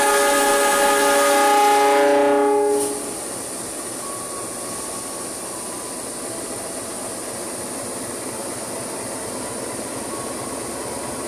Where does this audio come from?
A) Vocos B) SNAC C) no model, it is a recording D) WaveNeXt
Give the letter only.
C